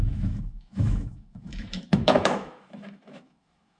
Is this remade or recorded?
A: remade